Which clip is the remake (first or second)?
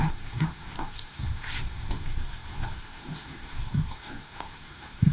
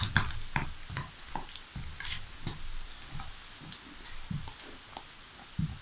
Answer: first